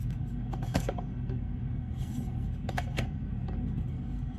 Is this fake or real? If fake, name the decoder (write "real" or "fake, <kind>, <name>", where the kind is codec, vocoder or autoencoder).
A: fake, codec, SNAC